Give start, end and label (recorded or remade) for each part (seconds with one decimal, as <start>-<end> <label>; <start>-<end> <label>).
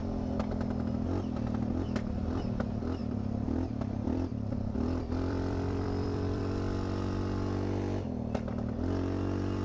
0.0-3.0 recorded; 3.0-6.4 remade; 6.4-9.6 recorded